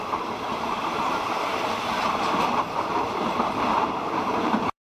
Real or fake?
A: fake